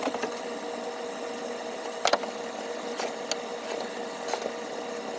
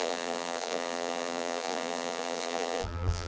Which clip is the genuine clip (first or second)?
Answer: first